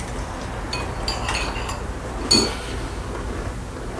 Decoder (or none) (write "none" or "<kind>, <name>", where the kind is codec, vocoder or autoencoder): none